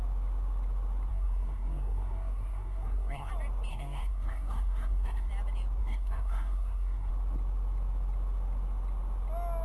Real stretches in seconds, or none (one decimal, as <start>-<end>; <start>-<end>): 0.0-1.1; 3.3-3.7; 5.3-5.8; 7.1-9.6